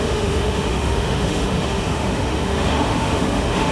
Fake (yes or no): yes